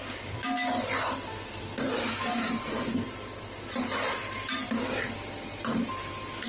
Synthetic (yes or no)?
no